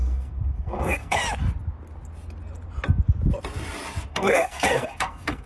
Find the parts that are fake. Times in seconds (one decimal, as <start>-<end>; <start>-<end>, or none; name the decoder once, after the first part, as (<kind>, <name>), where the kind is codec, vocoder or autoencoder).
0.0-1.2 (codec, SNAC); 4.1-5.5